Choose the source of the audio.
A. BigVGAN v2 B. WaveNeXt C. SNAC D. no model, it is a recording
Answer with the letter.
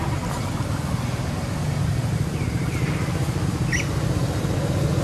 D